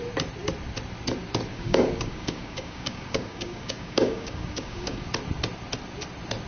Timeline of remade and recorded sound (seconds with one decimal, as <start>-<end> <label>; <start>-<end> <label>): 0.0-1.5 recorded; 1.5-5.1 remade; 5.1-6.5 recorded